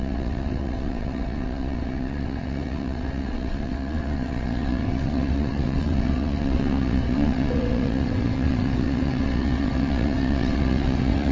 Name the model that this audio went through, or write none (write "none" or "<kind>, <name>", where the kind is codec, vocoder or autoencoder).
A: vocoder, WaveNeXt